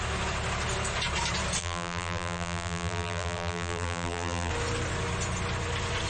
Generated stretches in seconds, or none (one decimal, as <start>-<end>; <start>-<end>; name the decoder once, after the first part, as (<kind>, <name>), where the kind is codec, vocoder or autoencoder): 1.6-4.5 (vocoder, BigVGAN v2)